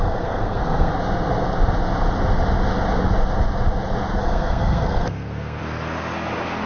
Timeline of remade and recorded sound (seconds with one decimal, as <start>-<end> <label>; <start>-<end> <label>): 0.0-0.9 remade; 0.9-4.2 recorded; 4.2-5.6 remade; 5.6-6.7 recorded

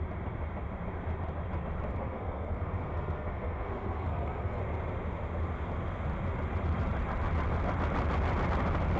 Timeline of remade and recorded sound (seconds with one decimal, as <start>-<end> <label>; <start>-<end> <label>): 0.0-1.9 recorded; 1.9-4.6 remade; 4.6-9.0 recorded

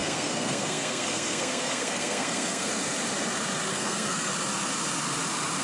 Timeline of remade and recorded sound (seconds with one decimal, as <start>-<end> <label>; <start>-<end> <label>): 0.0-2.7 remade; 2.7-3.7 recorded; 3.7-4.3 remade; 4.3-5.6 recorded

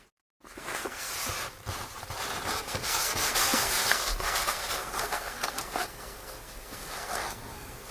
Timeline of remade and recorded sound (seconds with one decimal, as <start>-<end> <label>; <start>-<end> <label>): 0.0-1.1 remade; 1.1-2.5 recorded; 2.5-7.9 remade

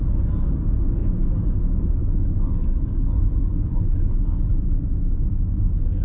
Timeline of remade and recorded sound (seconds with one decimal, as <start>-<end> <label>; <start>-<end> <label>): 0.0-6.0 recorded

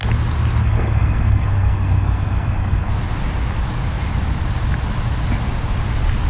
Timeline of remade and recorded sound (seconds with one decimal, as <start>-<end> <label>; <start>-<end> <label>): 0.0-0.6 recorded; 0.6-2.9 remade; 2.9-6.3 recorded

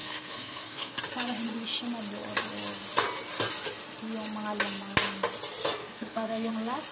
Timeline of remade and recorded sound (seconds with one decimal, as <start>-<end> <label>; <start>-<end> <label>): 0.0-1.0 remade; 1.0-5.8 recorded; 5.8-6.5 remade; 6.5-6.9 recorded

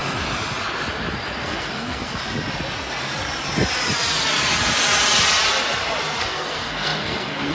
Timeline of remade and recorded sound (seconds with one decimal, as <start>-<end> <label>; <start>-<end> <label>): 0.0-1.4 recorded; 1.4-2.2 remade; 2.2-6.2 recorded; 6.2-7.5 remade